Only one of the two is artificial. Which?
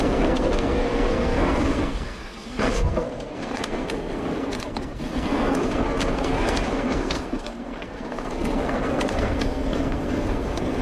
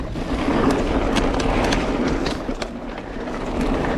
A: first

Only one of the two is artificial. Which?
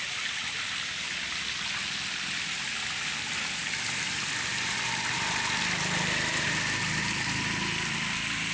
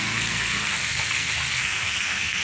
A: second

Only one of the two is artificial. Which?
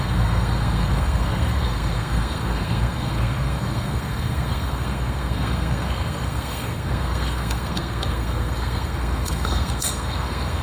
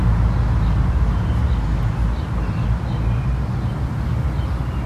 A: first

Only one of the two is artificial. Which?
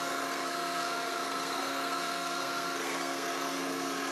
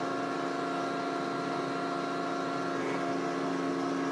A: first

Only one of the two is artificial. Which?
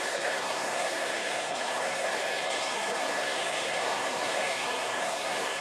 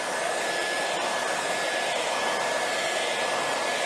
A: first